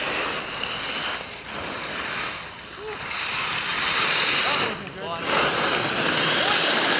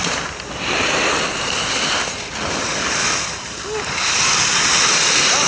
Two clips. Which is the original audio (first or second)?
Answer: first